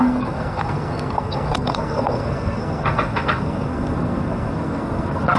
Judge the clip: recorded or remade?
remade